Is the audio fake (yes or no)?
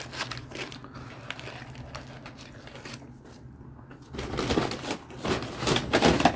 no